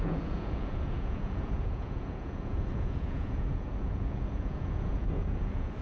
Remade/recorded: remade